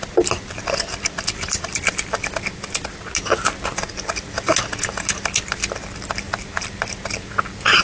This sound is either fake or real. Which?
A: real